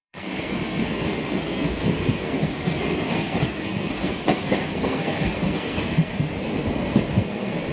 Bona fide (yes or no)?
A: no